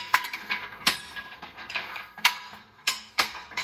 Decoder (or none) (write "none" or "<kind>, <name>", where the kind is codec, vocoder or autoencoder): codec, SNAC